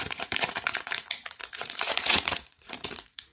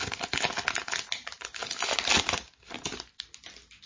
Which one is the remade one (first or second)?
first